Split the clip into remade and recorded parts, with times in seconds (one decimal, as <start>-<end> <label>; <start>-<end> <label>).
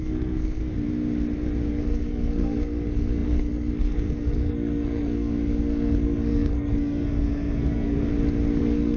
0.0-0.6 remade; 0.6-1.7 recorded; 1.7-8.1 remade; 8.1-8.6 recorded; 8.6-9.0 remade